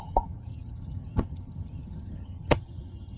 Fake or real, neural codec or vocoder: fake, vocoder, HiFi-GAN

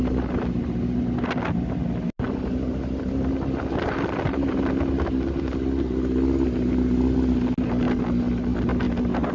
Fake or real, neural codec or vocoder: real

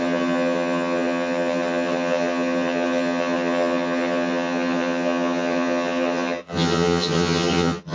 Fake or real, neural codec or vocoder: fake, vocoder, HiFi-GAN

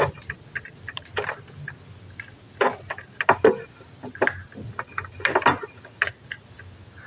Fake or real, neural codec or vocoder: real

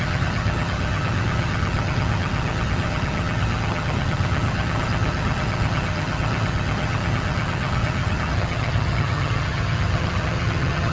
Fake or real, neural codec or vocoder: fake, vocoder, HiFi-GAN